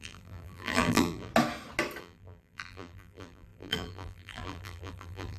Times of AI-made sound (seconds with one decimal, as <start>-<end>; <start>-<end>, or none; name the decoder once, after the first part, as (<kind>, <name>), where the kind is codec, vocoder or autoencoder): 0.0-1.3 (vocoder, BigVGAN v2); 2.0-5.4